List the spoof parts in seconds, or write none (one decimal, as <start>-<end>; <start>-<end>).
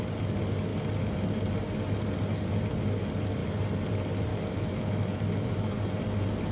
4.3-5.8